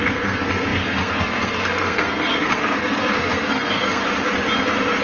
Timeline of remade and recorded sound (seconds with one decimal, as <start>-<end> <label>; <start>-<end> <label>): 0.0-4.0 remade; 4.0-5.0 recorded